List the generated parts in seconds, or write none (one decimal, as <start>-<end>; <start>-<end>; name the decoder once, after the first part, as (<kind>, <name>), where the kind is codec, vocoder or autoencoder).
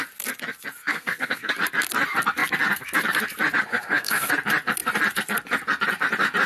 0.8-1.5 (codec, SNAC); 3.7-4.3